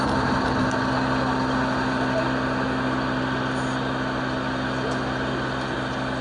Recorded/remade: recorded